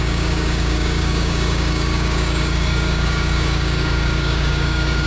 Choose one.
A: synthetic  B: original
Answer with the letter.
A